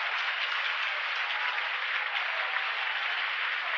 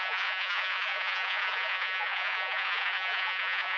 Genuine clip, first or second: first